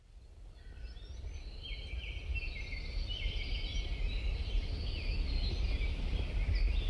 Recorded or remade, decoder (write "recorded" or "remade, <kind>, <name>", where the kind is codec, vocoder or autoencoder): recorded